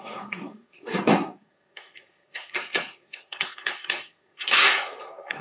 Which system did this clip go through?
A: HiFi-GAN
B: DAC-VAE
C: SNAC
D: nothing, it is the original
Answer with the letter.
C